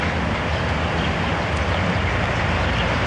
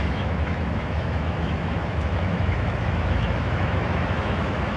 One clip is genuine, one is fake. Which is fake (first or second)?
second